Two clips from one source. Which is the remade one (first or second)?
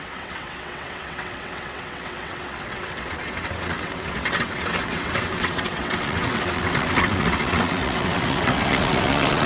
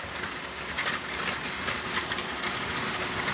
first